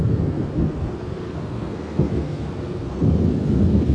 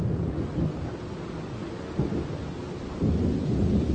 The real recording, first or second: second